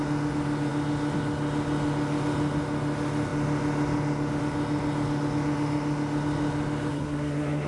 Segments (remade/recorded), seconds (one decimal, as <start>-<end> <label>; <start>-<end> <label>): 0.0-6.9 recorded; 6.9-7.7 remade